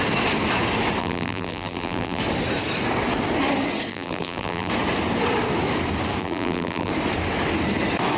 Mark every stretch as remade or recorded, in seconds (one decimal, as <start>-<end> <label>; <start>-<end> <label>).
0.0-1.0 recorded; 1.0-2.2 remade; 2.2-3.9 recorded; 3.9-4.7 remade; 4.7-6.2 recorded; 6.2-6.9 remade; 6.9-8.2 recorded